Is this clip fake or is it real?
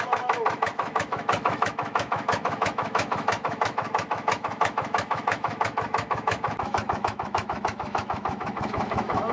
fake